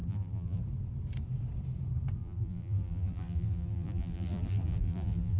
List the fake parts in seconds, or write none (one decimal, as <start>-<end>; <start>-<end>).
0.0-0.6; 2.2-5.4